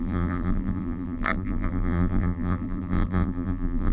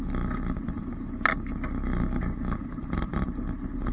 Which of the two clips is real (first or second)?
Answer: second